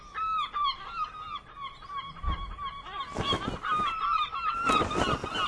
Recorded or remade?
recorded